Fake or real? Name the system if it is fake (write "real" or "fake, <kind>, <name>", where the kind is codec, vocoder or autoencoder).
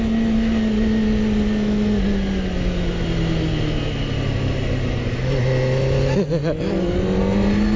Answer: real